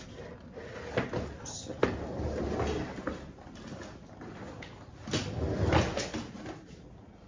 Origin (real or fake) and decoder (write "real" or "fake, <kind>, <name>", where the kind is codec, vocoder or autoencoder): real